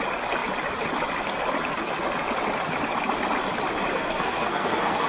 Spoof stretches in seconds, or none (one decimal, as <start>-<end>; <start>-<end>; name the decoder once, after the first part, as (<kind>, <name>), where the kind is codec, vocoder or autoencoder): 3.9-5.1 (codec, SNAC)